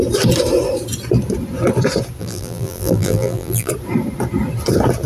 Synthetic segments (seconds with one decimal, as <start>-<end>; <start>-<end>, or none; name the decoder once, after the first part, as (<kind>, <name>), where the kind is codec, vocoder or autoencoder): 2.2-3.7 (vocoder, BigVGAN v2)